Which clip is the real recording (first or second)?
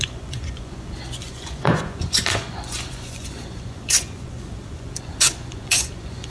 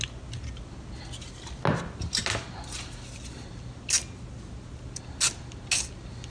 second